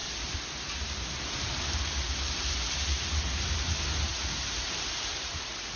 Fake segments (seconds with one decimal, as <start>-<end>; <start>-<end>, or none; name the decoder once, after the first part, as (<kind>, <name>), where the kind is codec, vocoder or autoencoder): none